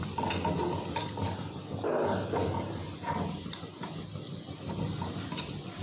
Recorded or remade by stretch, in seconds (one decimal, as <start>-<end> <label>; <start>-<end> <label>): 0.0-5.8 recorded